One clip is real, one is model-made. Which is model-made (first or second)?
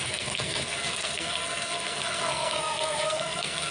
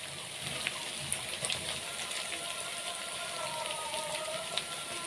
first